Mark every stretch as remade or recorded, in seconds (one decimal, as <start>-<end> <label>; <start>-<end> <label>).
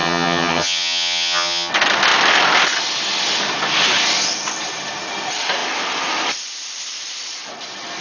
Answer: 0.0-1.7 remade; 1.7-8.0 recorded